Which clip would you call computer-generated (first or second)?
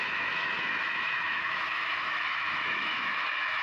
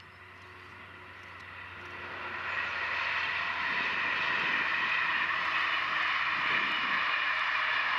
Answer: first